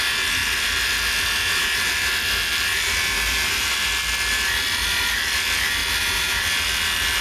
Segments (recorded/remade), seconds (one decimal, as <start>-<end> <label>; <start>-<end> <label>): 0.0-7.2 recorded